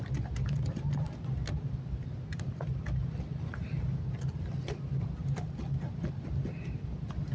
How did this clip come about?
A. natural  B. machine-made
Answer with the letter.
A